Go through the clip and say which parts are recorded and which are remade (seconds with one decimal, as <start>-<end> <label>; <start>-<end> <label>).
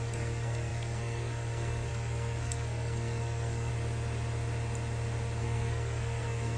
0.0-3.7 remade; 3.7-5.4 recorded; 5.4-6.6 remade